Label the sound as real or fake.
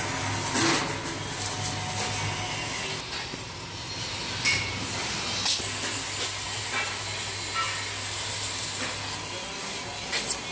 real